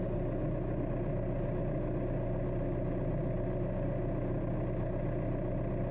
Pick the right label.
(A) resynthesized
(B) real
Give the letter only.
B